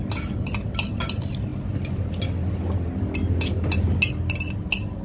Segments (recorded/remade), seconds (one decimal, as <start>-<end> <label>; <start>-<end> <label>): 0.0-5.0 recorded